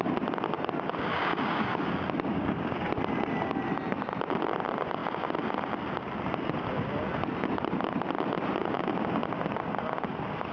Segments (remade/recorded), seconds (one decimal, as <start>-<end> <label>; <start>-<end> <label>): 0.0-1.1 recorded; 1.1-1.9 remade; 1.9-2.3 recorded; 2.3-2.9 remade; 2.9-10.5 recorded